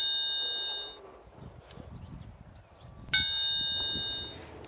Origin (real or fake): real